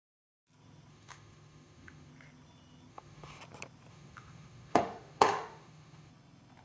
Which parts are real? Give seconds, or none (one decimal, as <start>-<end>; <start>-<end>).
0.0-0.9; 2.1-2.9; 3.4-3.9; 6.1-6.6